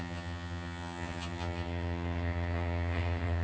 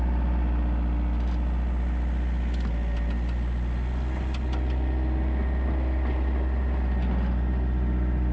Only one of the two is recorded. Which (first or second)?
second